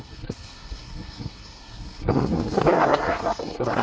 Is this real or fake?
fake